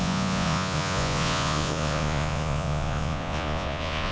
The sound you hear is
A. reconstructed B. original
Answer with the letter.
A